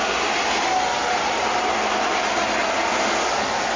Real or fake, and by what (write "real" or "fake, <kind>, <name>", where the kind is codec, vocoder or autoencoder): real